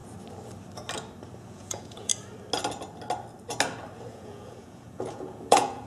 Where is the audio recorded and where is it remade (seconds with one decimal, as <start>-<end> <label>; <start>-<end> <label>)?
0.0-1.4 recorded; 1.4-2.1 remade; 2.1-4.1 recorded; 4.1-5.9 remade